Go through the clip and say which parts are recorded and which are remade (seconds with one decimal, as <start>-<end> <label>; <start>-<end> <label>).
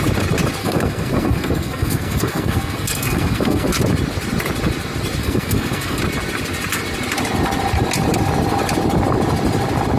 0.0-0.6 recorded; 0.6-3.8 remade; 3.8-5.2 recorded; 5.2-6.0 remade; 6.0-10.0 recorded